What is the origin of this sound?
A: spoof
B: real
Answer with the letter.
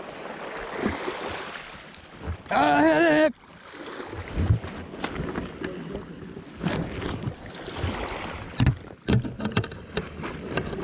B